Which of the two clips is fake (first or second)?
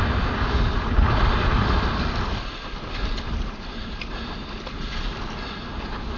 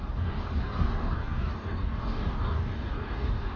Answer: second